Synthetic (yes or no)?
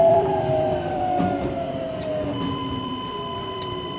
yes